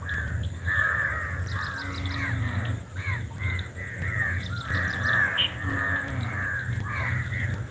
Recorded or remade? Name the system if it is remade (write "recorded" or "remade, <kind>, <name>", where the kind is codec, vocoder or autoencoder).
recorded